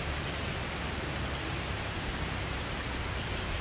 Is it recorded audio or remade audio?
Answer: recorded